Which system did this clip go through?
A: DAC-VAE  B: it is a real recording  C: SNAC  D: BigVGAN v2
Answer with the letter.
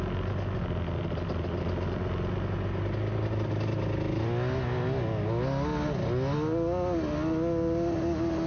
B